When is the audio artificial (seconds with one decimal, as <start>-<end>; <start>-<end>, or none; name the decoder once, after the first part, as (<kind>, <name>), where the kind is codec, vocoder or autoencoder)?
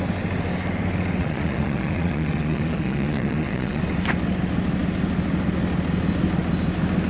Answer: 1.2-3.8 (vocoder, Vocos)